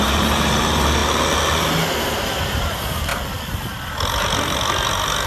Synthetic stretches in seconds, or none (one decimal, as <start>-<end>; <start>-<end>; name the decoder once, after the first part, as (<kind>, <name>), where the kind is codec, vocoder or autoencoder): 0.0-1.0 (vocoder, BigVGAN v2); 1.9-3.1